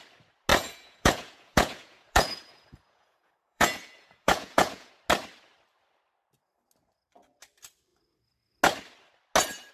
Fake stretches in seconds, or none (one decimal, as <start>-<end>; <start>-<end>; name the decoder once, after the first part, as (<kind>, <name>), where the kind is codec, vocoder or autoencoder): 0.5-4.9 (vocoder, Vocos)